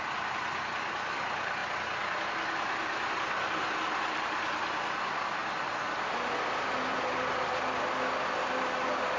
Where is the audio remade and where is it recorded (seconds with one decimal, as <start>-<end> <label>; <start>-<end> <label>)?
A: 0.0-9.2 recorded